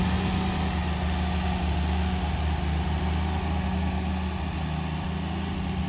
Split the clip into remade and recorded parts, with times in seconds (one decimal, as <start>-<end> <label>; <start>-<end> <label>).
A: 0.0-5.9 recorded